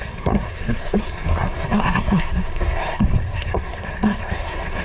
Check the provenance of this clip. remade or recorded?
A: remade